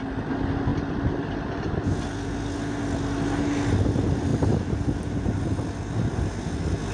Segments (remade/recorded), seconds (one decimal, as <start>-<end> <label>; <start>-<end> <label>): 0.0-6.9 recorded

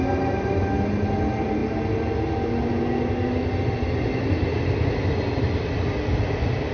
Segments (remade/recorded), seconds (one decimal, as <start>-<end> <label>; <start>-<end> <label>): 0.0-6.7 recorded

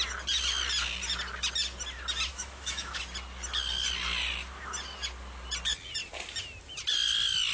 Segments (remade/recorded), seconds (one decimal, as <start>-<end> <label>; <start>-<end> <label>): 0.0-2.3 recorded; 2.3-3.0 remade; 3.0-7.5 recorded

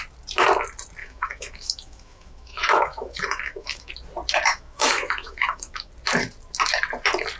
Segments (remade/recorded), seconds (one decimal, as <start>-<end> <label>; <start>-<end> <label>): 0.0-1.0 recorded; 1.0-3.9 remade; 3.9-4.5 recorded; 4.5-5.9 remade; 5.9-7.4 recorded

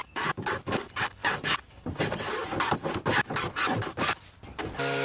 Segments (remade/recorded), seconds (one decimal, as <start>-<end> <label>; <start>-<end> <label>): 0.0-0.7 remade; 0.7-5.0 recorded